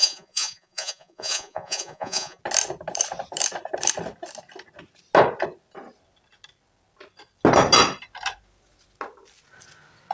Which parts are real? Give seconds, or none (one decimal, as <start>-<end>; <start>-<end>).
2.4-10.1